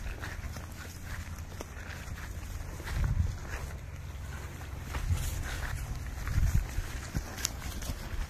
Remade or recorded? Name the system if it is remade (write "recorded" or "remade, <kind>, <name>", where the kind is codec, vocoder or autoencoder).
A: recorded